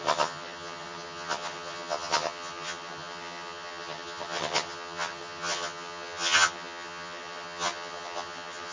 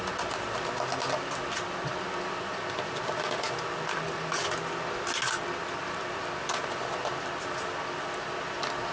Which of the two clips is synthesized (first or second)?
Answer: first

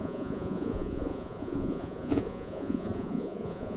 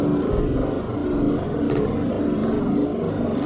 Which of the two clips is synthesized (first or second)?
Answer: first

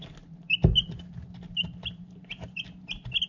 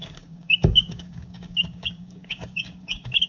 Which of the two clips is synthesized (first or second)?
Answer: second